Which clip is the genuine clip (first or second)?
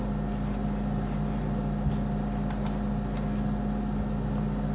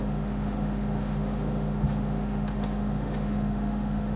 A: first